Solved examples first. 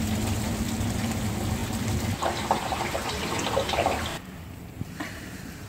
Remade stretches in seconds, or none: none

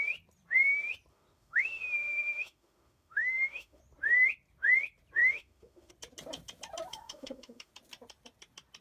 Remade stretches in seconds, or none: 1.1-3.8 (autoencoder, DAC-VAE); 5.2-5.9; 6.9-7.7

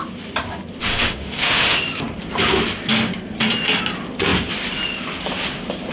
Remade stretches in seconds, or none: 0.8-1.8 (autoencoder, DAC-VAE)

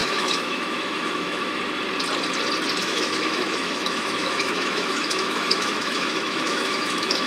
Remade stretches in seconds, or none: 0.0-1.6 (autoencoder, DAC-VAE); 2.8-7.3

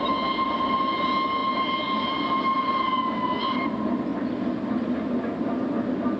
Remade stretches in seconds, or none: none

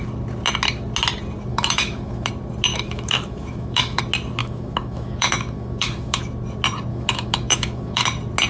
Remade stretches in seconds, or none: 1.5-2.3 (autoencoder, DAC-VAE); 2.7-4.0; 4.4-6.2; 6.9-8.0

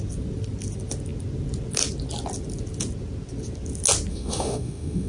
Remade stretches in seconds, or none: 4.1-5.1 (autoencoder, DAC-VAE)